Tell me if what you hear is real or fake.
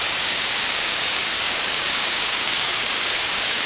fake